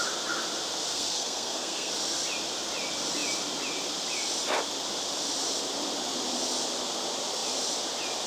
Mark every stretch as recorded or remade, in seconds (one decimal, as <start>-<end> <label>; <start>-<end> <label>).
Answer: 0.0-0.9 recorded; 0.9-1.9 remade; 1.9-8.3 recorded